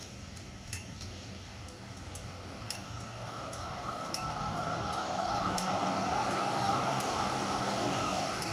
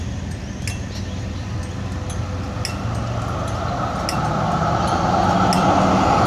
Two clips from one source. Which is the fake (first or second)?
first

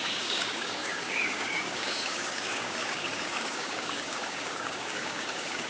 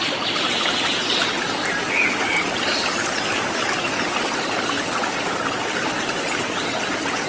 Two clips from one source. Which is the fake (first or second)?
first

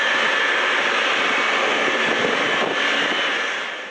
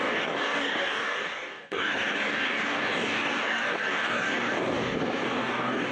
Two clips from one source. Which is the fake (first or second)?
second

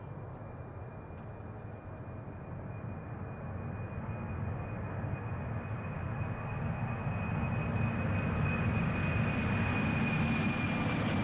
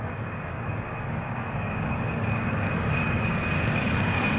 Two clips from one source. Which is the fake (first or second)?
second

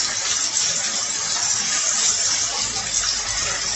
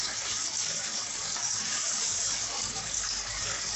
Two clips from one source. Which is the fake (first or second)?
second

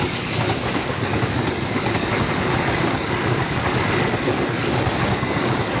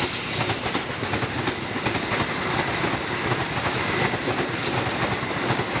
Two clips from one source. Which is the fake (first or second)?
first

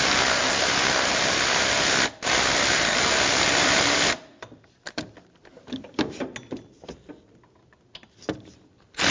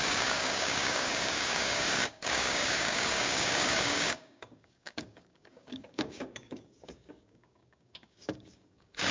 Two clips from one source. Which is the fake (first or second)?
second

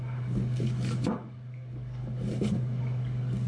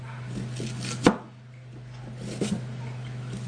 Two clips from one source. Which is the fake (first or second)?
first